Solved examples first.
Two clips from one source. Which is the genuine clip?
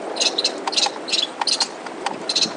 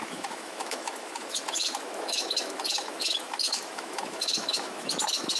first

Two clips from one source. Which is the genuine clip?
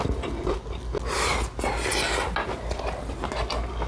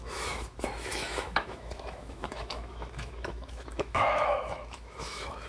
first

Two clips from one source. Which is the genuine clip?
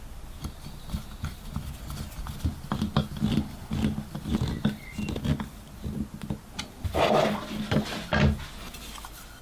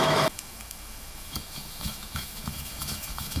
first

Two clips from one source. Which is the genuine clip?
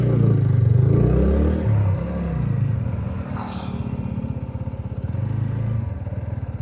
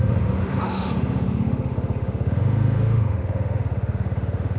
first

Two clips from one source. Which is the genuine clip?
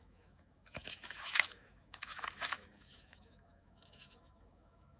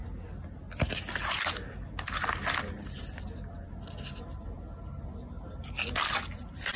second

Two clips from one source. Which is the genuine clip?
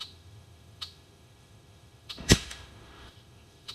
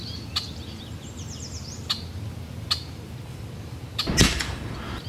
second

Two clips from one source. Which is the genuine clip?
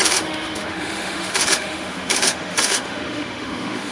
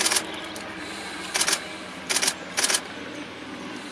second